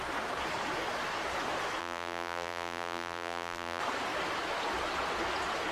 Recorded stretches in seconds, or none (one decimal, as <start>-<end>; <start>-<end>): 0.0-1.8; 3.8-5.7